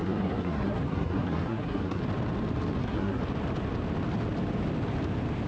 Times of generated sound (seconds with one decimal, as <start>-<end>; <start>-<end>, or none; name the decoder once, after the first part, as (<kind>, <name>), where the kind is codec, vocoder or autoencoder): 0.0-2.0 (codec, SNAC); 2.8-3.2